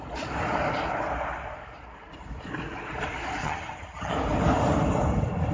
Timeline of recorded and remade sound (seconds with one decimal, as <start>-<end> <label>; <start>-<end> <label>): 0.0-3.4 recorded; 3.4-4.1 remade; 4.1-5.5 recorded